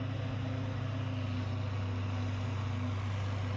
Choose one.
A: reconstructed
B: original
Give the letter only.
B